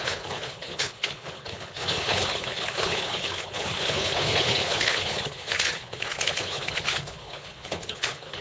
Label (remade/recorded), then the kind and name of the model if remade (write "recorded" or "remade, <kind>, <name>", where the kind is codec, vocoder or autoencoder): remade, codec, HILCodec